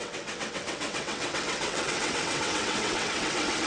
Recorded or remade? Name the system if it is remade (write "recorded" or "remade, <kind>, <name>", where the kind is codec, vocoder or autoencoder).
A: remade, vocoder, WaveNeXt